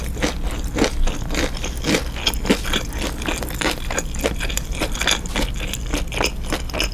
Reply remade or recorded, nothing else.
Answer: recorded